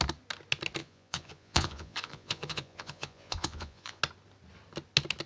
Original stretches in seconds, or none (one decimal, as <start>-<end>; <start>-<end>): 0.0-0.8; 4.0-5.3